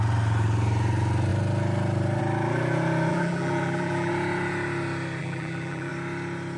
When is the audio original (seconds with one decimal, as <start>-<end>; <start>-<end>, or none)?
0.0-3.1; 4.1-5.2; 5.9-6.6